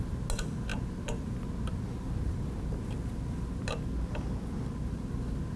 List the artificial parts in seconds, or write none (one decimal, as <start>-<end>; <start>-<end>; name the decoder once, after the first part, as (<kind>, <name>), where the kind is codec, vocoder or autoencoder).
none